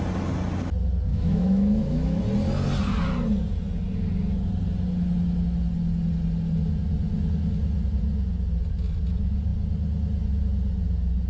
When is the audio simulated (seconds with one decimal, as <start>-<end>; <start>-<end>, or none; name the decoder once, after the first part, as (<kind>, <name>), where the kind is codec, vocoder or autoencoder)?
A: 1.1-2.2 (autoencoder, DAC-VAE)